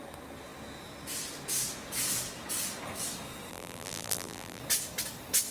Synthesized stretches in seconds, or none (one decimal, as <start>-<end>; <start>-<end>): 3.5-4.6